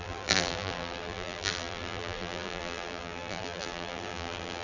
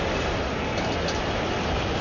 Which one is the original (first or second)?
second